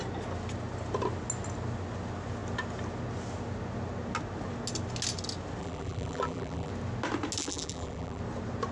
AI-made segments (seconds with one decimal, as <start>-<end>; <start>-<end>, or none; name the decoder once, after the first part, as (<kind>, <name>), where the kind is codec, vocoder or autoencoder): 5.6-6.7 (vocoder, BigVGAN v2); 7.4-8.2